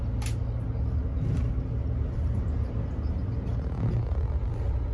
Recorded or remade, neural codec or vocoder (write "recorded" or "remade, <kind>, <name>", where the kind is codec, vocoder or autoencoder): recorded